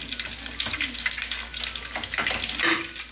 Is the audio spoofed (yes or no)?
no